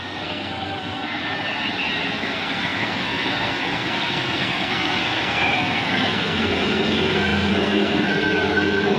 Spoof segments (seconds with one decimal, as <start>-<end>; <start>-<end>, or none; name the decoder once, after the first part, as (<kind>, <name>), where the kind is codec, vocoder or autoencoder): 0.0-1.2 (codec, SNAC); 2.1-9.0

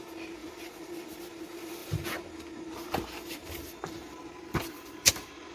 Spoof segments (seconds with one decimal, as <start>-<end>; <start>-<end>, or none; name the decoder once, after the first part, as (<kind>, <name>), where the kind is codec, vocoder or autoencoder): 0.4-1.4 (vocoder, BigVGAN v2)

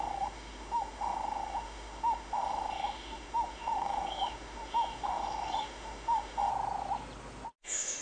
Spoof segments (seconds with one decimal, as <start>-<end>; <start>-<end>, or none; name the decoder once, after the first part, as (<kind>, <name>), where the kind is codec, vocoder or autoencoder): 0.0-6.5 (autoencoder, DAC-VAE); 7.6-8.0

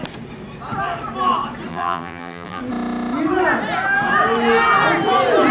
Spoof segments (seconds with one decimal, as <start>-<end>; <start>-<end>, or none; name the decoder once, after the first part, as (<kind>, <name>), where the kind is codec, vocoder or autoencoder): 1.7-2.6 (vocoder, BigVGAN v2)